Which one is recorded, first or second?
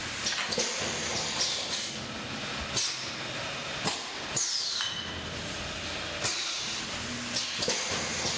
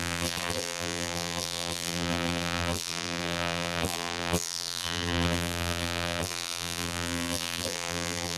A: first